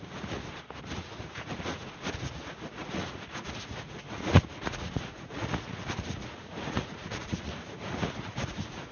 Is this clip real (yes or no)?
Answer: no